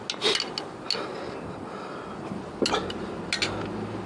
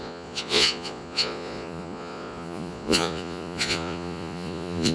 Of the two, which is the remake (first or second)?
second